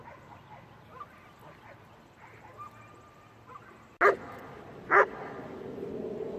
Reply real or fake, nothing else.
real